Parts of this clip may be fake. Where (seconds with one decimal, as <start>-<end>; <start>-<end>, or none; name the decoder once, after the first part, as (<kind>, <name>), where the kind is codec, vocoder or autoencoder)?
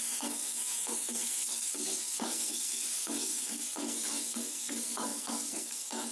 0.0-6.1 (codec, SNAC)